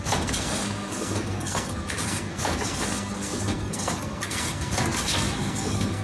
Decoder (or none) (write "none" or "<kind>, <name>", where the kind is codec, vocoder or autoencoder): codec, SNAC